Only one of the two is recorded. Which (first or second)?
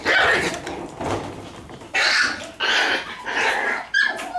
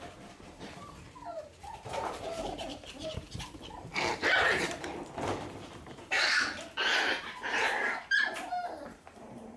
first